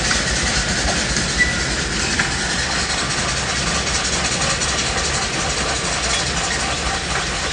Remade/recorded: recorded